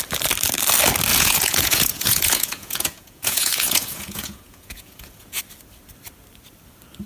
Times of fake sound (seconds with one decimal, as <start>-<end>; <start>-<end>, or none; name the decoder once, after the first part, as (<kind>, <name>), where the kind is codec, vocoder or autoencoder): 1.1-5.4 (vocoder, Vocos)